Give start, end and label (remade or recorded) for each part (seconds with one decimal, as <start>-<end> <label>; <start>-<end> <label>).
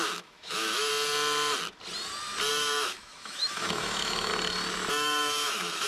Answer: 0.0-0.9 remade; 0.9-2.5 recorded; 2.5-4.3 remade; 4.3-4.9 recorded; 4.9-5.9 remade